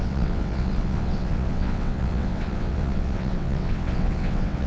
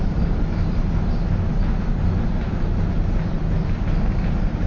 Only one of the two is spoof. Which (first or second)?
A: first